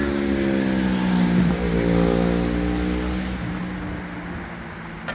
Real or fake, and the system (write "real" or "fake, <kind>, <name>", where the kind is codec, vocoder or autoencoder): real